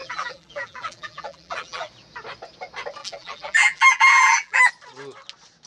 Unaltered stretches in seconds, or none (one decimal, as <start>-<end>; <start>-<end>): 1.9-3.0; 4.7-5.7